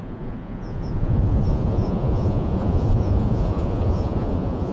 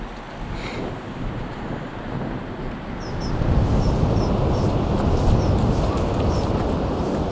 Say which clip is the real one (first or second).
second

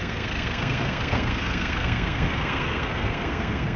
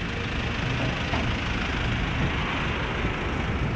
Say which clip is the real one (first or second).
second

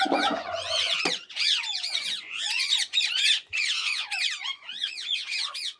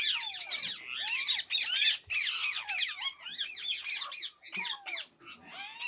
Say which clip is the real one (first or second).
second